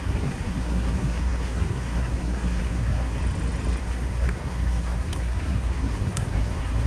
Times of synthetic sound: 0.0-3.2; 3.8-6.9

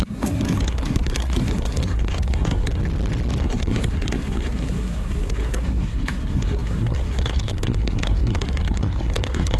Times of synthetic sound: 0.0-2.8; 3.4-9.6

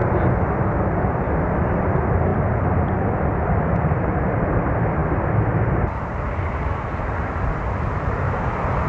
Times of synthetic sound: 1.0-8.9

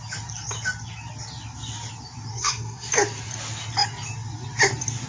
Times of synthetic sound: 2.3-2.9

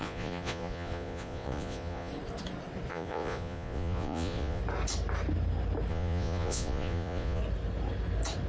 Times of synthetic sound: 0.0-2.1; 2.9-4.6; 5.9-7.4